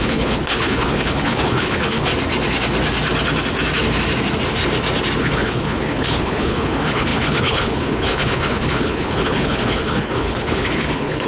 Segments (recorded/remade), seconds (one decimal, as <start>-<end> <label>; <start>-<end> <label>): 0.0-2.1 remade; 2.1-5.2 recorded; 5.2-11.3 remade